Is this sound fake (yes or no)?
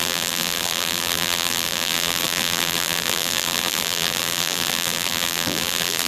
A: yes